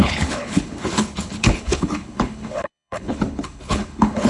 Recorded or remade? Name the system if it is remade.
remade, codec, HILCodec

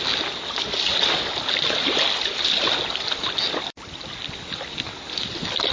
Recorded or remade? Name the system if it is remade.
recorded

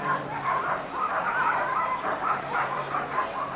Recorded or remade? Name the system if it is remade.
remade, vocoder, BigVGAN v2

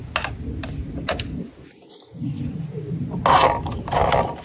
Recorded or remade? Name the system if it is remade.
recorded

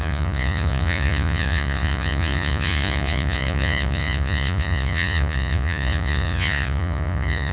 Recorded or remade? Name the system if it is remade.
remade, vocoder, Vocos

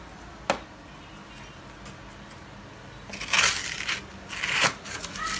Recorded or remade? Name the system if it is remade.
recorded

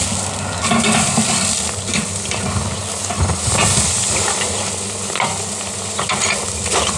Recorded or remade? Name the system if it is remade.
recorded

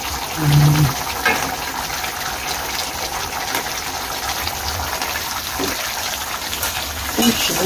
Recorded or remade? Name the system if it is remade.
recorded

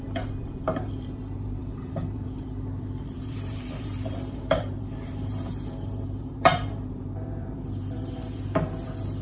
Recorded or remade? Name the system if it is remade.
remade, vocoder, BigVGAN v2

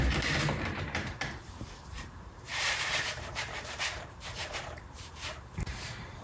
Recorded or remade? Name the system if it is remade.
remade, vocoder, BigVGAN v2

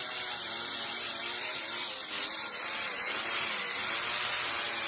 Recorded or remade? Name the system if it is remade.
recorded